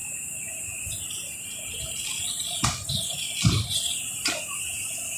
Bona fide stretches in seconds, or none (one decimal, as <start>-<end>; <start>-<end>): 0.0-5.2